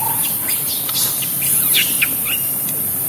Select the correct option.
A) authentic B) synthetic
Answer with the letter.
A